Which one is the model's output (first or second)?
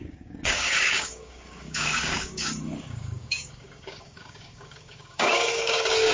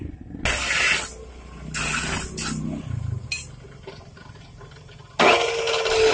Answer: first